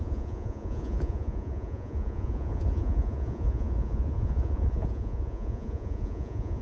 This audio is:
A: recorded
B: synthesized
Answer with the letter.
B